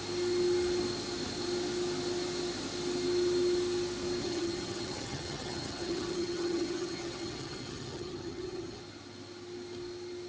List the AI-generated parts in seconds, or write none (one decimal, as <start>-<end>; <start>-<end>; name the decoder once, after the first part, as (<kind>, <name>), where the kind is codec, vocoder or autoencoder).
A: 4.2-8.8 (vocoder, HiFi-GAN)